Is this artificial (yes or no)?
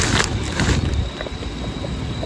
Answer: no